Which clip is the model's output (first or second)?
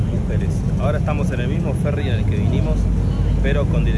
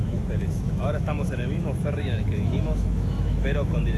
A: second